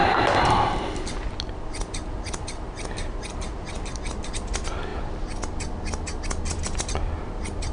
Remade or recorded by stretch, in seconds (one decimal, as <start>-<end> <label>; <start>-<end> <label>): 0.0-1.8 recorded; 1.8-4.9 remade; 4.9-6.5 recorded; 6.5-7.7 remade